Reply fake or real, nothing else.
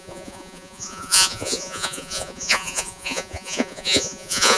fake